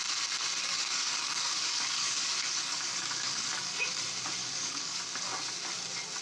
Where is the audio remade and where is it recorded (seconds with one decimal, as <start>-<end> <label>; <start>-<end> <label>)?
0.0-0.6 recorded; 0.6-4.0 remade; 4.0-4.4 recorded; 4.4-5.0 remade; 5.0-6.2 recorded